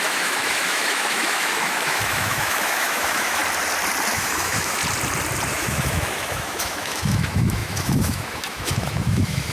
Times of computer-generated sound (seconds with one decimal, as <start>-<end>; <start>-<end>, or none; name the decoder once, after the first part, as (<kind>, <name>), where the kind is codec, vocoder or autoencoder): 0.0-3.4 (autoencoder, DAC-VAE); 4.1-4.8; 5.5-9.5